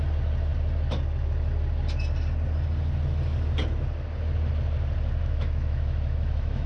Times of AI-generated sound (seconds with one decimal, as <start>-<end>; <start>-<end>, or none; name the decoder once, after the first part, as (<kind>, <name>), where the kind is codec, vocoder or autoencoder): 5.2-6.7 (autoencoder, DAC-VAE)